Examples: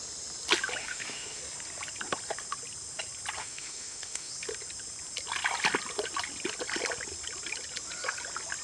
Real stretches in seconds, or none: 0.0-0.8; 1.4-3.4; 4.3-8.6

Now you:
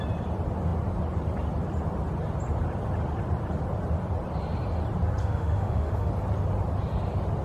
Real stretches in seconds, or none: 0.0-5.2; 6.1-7.4

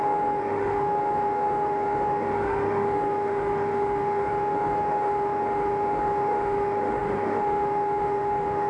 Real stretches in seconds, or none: none

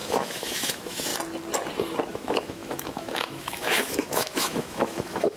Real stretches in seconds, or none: 1.1-2.1

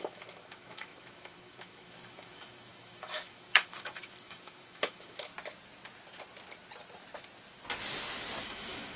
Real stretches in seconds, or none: 5.3-8.4

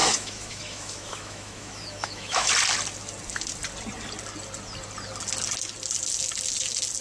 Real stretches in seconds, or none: 2.5-7.0

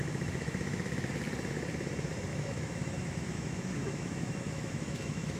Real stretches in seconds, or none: 1.1-2.3